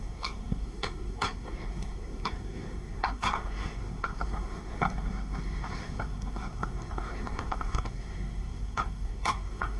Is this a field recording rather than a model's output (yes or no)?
no